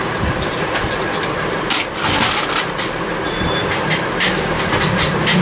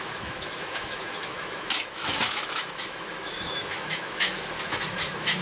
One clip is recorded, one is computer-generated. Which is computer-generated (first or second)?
second